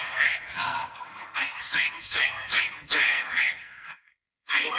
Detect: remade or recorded remade